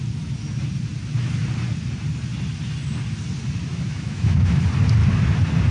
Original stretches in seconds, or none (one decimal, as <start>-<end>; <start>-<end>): 0.0-3.7; 4.6-5.7